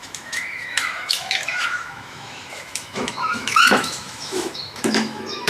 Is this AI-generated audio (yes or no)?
yes